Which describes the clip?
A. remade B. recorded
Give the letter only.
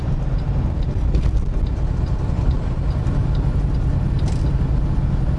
B